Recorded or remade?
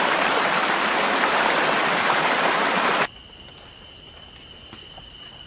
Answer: recorded